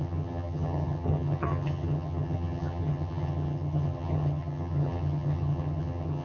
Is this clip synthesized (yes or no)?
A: yes